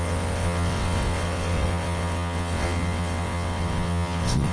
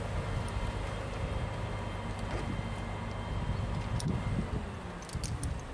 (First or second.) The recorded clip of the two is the second